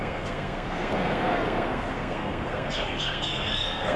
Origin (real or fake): fake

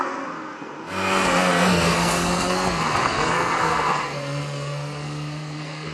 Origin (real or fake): fake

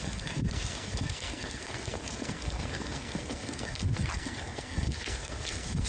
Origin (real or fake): fake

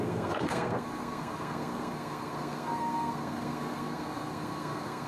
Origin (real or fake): fake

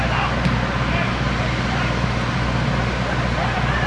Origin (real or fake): real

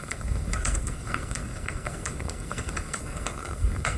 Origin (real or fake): fake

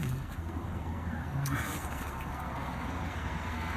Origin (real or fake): fake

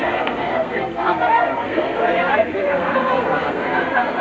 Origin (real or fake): fake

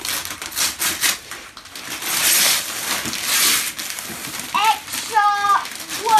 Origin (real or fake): real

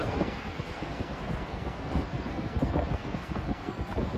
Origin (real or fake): fake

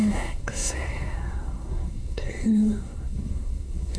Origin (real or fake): fake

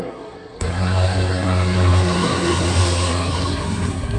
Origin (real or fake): fake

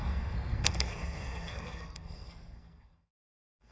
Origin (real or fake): fake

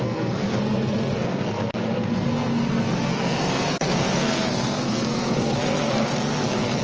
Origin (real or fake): fake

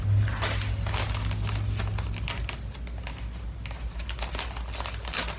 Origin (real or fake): real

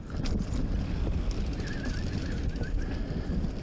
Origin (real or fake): real